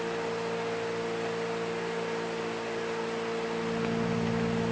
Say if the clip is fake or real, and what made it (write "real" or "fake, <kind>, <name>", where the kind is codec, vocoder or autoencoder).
real